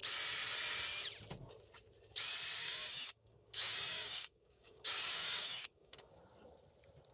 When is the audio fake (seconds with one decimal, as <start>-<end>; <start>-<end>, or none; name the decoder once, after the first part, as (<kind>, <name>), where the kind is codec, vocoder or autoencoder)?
2.6-6.2 (codec, DAC)